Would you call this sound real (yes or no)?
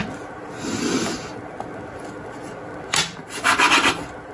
yes